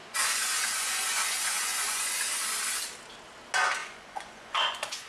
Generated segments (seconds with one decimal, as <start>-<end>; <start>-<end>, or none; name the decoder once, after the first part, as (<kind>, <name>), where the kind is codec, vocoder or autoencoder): 0.0-2.2 (vocoder, Vocos); 3.8-5.1